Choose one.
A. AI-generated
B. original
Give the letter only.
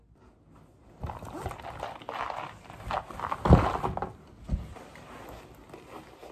B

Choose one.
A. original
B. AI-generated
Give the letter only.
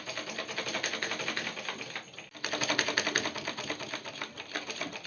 A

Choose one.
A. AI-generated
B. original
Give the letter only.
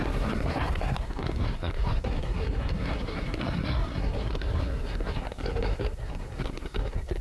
A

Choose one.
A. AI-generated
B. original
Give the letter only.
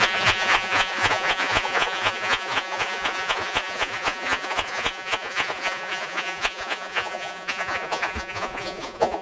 A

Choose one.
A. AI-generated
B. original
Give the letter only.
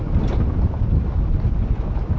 B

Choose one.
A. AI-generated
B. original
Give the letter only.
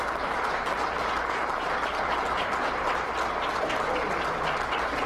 B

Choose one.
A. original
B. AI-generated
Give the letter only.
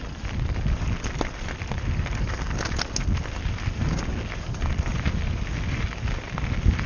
A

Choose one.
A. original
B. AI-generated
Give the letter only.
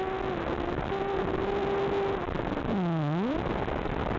A